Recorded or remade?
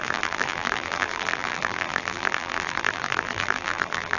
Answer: remade